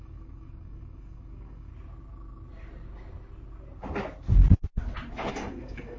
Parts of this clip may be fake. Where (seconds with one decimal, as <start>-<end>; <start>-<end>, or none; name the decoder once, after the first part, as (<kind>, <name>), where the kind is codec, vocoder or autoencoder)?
0.0-1.7 (codec, DAC); 5.3-6.0